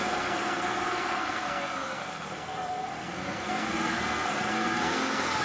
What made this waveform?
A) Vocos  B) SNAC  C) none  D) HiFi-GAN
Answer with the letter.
B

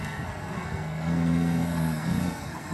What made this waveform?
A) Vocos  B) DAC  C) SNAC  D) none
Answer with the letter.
C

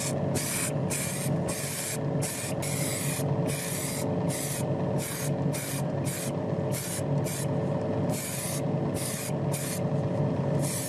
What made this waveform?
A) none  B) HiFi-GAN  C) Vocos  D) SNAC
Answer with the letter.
A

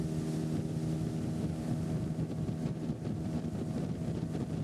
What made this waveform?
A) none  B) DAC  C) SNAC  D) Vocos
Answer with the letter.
A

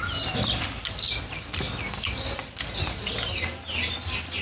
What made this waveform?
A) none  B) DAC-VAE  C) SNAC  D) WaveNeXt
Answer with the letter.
A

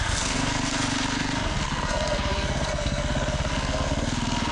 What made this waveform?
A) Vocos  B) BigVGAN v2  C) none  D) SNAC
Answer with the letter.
D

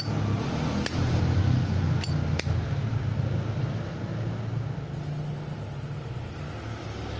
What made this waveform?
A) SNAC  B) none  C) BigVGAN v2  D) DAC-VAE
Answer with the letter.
B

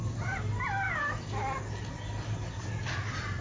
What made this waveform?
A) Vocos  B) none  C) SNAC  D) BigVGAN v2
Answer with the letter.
B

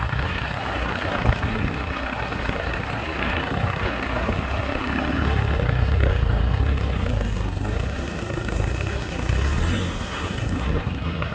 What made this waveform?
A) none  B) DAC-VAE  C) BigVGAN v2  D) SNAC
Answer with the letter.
D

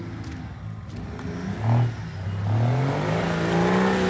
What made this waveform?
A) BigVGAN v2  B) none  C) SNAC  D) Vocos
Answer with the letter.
B